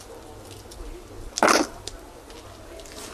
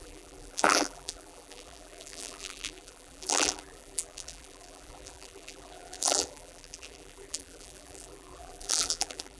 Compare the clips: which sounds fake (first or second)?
second